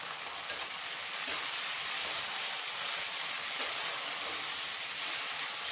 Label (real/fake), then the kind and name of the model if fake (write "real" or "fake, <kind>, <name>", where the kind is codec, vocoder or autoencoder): real